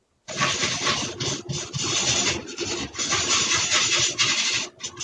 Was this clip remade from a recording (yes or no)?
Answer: no